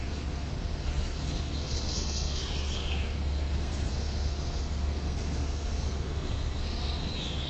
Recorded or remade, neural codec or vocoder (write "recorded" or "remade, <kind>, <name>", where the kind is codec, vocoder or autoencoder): remade, codec, SNAC